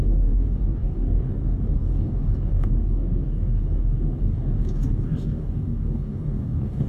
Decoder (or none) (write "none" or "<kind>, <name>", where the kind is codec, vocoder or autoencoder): codec, DAC